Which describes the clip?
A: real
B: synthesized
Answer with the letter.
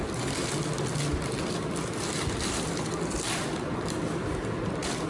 B